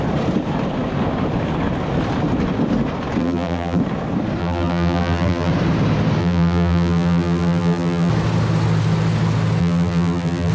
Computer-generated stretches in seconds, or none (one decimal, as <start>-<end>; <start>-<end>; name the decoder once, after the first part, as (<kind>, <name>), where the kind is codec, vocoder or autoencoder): 3.2-3.8 (vocoder, BigVGAN v2); 4.4-5.5; 6.2-8.1; 9.6-10.5